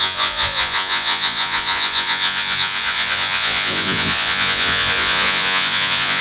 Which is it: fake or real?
fake